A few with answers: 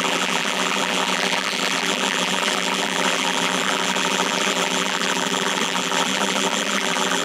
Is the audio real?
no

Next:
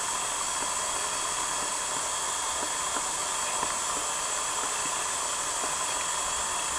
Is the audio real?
yes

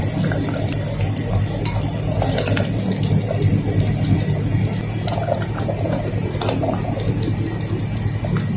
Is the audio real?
yes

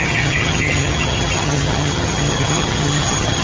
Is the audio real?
no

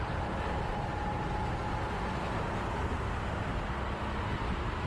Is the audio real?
yes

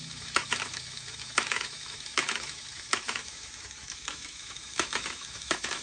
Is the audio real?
no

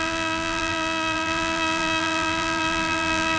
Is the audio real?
no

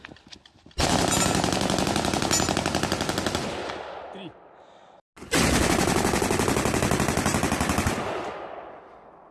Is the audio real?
yes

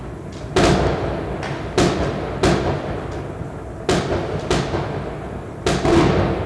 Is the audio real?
yes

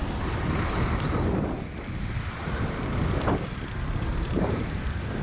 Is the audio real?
yes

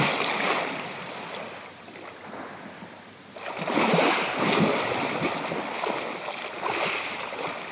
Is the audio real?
yes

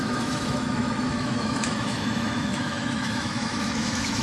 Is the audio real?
no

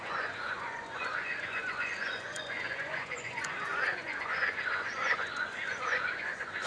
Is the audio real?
no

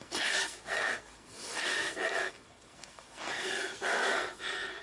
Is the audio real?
no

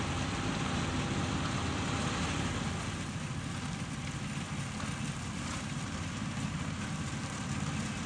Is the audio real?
yes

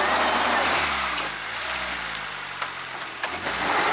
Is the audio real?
yes